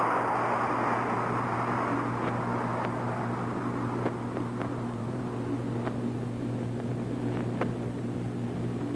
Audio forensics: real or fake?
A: real